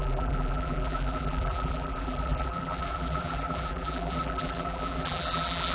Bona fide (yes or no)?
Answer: no